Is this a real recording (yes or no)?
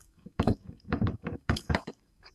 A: no